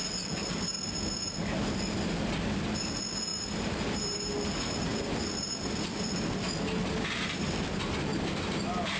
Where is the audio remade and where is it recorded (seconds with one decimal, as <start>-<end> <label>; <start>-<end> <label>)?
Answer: 0.0-3.3 recorded; 3.3-4.3 remade; 4.3-9.0 recorded